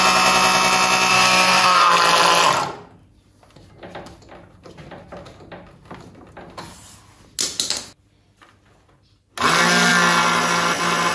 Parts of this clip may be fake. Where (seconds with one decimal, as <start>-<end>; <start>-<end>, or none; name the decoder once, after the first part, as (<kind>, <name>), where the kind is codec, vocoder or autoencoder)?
1.1-1.9 (codec, SNAC)